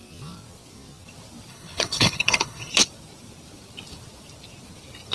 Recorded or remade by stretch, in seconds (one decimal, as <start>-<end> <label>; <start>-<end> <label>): 0.0-1.5 recorded; 1.5-2.7 remade; 2.7-5.1 recorded